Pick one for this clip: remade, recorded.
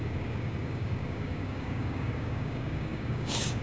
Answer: remade